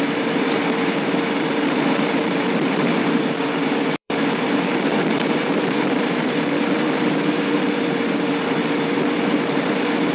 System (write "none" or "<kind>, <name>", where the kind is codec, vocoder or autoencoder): vocoder, BigVGAN v2